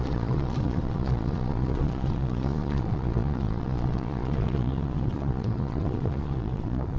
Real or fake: fake